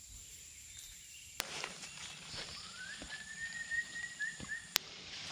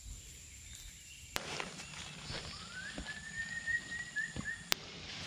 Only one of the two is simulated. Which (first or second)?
first